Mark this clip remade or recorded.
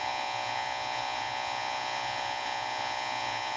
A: remade